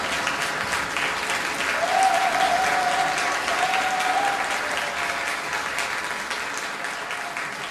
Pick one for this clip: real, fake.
real